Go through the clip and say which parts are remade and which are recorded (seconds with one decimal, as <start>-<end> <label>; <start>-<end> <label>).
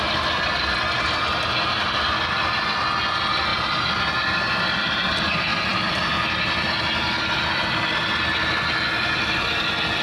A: 0.0-10.0 recorded